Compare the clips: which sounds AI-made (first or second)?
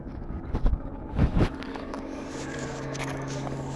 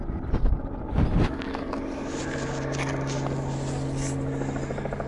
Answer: first